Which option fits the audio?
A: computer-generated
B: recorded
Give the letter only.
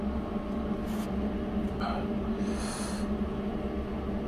B